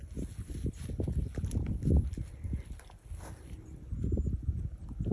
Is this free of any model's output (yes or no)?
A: yes